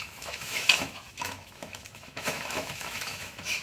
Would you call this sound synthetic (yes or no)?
yes